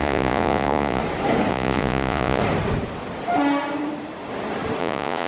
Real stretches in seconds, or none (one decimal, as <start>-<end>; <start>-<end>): 1.0-1.5; 2.4-4.8